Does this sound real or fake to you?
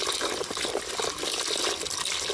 real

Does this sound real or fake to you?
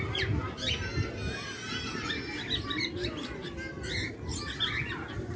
real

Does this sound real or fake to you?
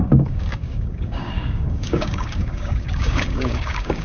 fake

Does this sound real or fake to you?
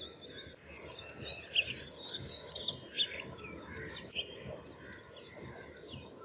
real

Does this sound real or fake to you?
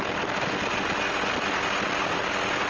real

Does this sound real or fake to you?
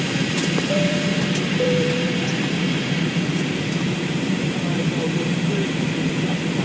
fake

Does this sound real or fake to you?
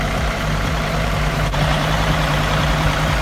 fake